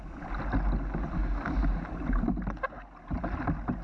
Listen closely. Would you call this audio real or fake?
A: real